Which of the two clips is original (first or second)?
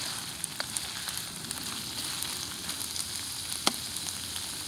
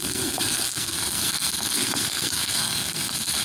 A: first